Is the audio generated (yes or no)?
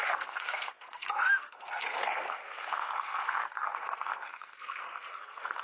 yes